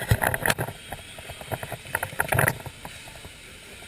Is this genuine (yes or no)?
yes